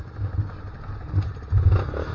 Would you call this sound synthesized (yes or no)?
no